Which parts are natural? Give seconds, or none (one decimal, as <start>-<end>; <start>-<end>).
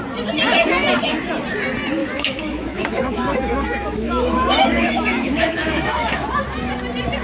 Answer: 0.0-2.0; 6.3-7.2